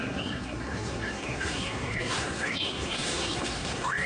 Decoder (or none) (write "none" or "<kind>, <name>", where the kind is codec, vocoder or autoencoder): codec, SNAC